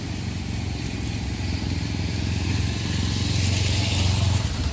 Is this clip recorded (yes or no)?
yes